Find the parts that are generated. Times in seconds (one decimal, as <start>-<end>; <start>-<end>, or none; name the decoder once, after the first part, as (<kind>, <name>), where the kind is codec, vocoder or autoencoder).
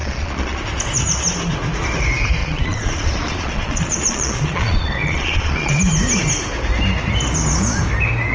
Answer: 0.0-0.6 (vocoder, Vocos); 2.4-5.8